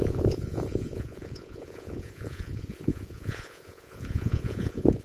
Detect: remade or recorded remade